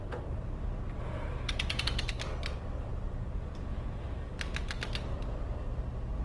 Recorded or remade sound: recorded